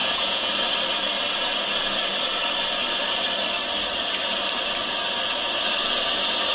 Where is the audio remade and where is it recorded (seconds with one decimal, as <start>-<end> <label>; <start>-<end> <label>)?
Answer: 0.0-0.5 remade; 0.5-6.5 recorded